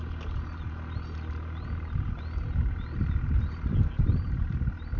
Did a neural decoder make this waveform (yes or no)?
no